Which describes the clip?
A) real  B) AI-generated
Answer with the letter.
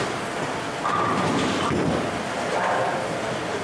A